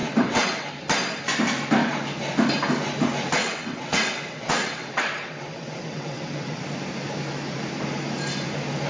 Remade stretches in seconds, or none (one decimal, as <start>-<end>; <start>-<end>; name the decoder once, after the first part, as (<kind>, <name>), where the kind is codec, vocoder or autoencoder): 0.0-0.7 (vocoder, WaveNeXt); 3.4-6.6